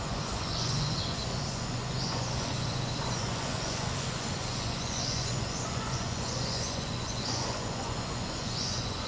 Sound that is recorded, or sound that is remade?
remade